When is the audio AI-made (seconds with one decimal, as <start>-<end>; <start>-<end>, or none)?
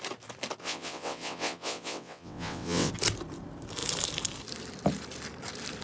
0.6-2.9